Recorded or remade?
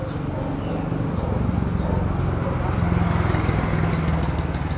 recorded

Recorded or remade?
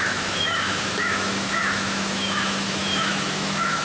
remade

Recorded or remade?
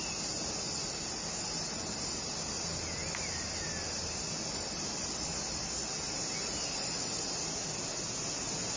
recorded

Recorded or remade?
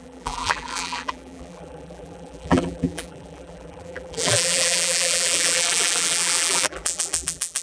remade